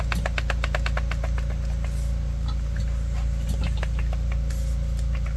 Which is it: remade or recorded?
recorded